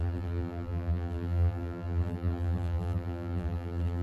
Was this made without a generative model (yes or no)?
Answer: no